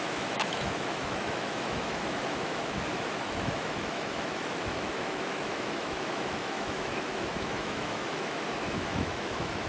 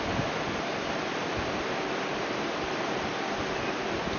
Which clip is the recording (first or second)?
second